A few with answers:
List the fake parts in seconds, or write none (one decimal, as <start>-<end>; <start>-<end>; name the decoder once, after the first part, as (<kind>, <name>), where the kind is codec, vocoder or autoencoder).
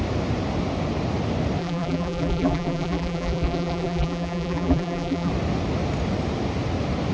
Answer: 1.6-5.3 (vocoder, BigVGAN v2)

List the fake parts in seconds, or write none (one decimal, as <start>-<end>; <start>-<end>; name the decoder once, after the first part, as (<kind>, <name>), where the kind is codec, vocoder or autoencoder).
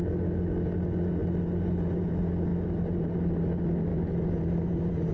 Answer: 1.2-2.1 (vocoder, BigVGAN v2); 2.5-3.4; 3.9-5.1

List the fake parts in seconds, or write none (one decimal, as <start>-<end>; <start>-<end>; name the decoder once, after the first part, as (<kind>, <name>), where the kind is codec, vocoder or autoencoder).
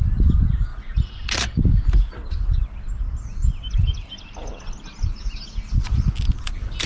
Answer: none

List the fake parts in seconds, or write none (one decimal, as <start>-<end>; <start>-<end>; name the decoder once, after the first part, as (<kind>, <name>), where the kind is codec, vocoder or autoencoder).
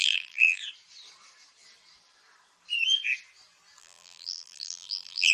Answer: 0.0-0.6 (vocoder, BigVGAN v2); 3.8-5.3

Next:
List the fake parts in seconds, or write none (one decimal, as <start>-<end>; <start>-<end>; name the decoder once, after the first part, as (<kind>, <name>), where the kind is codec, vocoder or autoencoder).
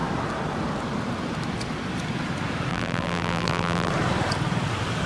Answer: 2.7-3.9 (vocoder, BigVGAN v2)